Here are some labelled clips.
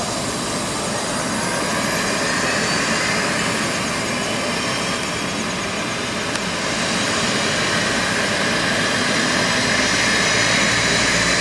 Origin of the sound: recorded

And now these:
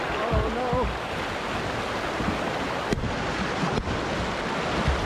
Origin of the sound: recorded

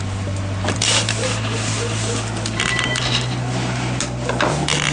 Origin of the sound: recorded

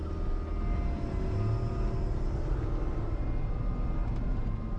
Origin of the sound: recorded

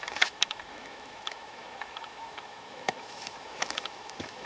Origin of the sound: remade